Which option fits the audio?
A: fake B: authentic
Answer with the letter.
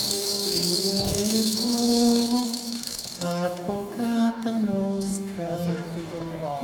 A